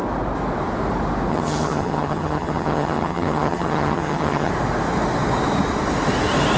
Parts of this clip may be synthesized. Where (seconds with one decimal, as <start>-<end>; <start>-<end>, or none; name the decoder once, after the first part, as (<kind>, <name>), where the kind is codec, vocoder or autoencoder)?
1.3-4.5 (vocoder, HiFi-GAN)